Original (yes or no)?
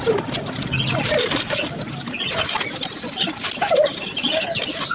yes